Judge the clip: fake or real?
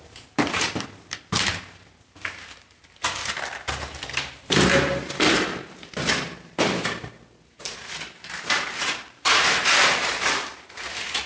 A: fake